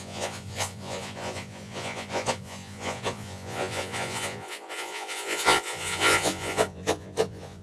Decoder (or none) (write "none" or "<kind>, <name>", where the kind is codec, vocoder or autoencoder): vocoder, Vocos